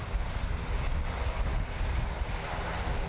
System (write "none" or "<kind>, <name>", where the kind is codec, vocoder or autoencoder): none